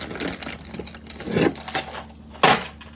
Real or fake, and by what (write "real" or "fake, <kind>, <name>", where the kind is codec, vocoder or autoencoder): real